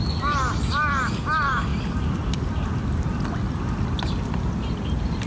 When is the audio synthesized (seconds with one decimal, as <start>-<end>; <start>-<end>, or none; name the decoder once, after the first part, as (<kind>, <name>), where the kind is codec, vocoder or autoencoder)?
none